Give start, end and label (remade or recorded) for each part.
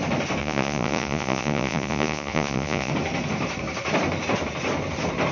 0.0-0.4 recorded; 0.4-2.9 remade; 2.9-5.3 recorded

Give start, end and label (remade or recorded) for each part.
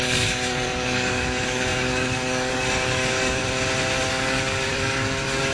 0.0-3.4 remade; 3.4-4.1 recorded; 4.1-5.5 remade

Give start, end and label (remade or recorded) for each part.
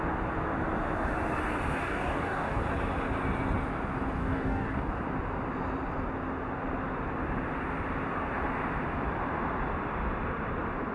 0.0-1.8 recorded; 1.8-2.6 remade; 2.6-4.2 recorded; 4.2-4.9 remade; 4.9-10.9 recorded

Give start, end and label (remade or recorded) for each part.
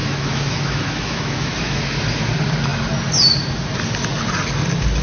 0.0-1.8 remade; 1.8-5.0 recorded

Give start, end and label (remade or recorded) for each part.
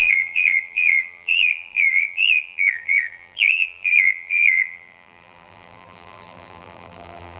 0.0-7.4 remade